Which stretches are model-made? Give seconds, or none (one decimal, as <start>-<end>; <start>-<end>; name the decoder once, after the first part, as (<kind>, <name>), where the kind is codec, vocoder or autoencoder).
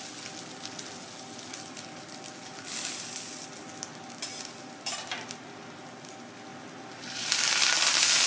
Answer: none